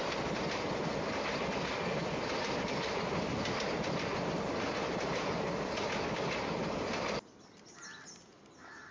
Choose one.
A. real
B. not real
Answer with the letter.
A